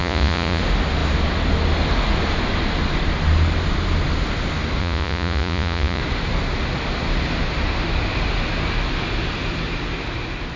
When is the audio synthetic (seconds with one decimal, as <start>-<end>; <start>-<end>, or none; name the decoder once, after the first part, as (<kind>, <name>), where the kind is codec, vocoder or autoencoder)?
0.0-0.6 (vocoder, Vocos); 4.8-6.0